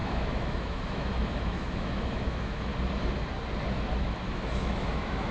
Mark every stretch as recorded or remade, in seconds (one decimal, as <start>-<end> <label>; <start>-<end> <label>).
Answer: 0.0-2.7 remade; 2.7-4.0 recorded; 4.0-5.3 remade